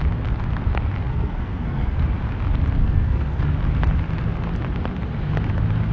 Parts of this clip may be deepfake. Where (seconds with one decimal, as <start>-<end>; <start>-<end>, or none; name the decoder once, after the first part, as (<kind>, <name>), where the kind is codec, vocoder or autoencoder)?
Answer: 1.0-2.0 (codec, SNAC); 2.8-3.4